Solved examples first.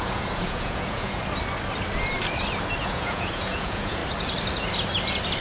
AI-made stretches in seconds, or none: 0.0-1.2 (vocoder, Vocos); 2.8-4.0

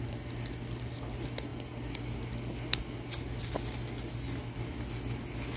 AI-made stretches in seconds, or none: none

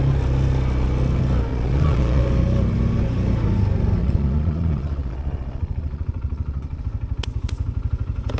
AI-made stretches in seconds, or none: 1.5-2.2 (vocoder, Vocos); 4.0-6.8

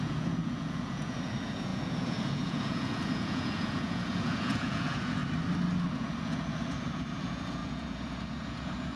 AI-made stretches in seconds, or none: 0.0-5.2 (vocoder, Vocos); 5.9-9.0

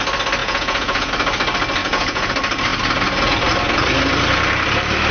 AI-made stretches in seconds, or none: 0.4-1.1 (vocoder, Vocos); 1.8-2.3